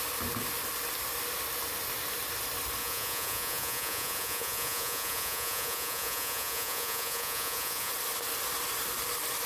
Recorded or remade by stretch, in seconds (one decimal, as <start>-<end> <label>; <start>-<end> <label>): 0.0-2.8 recorded; 2.8-7.9 remade; 7.9-9.5 recorded